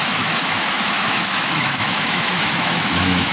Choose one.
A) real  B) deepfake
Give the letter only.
B